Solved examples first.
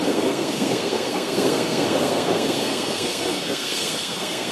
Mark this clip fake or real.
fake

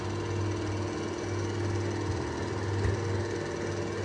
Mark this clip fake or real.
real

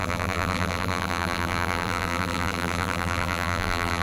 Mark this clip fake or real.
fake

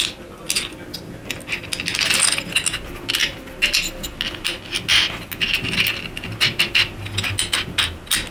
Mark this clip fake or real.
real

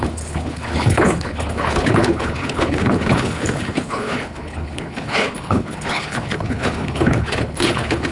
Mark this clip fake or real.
fake